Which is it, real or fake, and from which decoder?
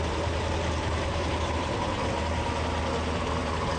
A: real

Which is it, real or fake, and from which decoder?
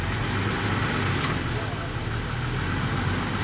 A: real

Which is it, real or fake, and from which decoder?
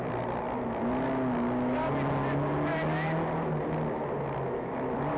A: real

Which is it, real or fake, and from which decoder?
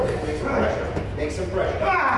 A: real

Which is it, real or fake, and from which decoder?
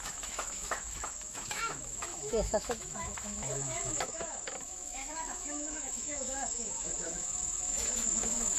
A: fake, autoencoder, DAC-VAE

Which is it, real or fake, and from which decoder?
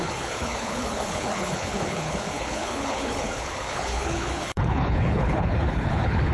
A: fake, codec, HILCodec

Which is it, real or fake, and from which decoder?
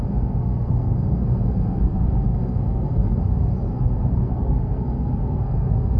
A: fake, codec, SNAC